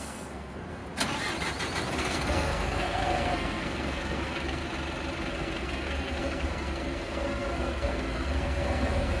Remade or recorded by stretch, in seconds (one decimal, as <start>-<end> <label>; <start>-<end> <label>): 0.0-0.8 remade; 0.8-2.0 recorded; 2.0-4.6 remade; 4.6-5.3 recorded; 5.3-9.2 remade